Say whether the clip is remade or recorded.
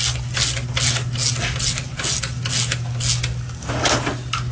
recorded